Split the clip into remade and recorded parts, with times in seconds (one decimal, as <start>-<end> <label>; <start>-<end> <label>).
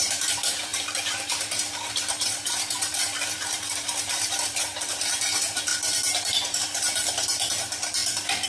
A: 0.0-5.7 remade; 5.7-6.3 recorded; 6.3-8.0 remade; 8.0-8.5 recorded